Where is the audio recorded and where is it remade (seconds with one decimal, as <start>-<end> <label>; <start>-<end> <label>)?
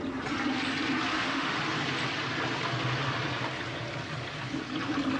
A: 0.0-1.1 recorded; 1.1-1.6 remade; 1.6-5.2 recorded